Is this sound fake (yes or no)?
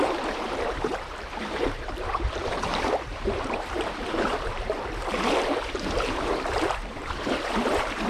yes